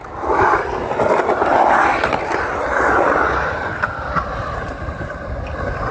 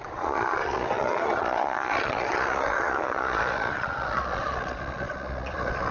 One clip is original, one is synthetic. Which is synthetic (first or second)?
second